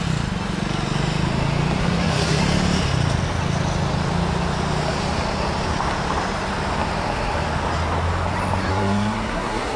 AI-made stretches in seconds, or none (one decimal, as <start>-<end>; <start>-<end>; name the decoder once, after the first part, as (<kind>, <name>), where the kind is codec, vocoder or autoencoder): 1.8-2.4 (codec, SNAC); 8.7-9.8